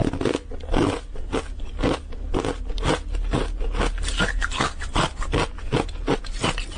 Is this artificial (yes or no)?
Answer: no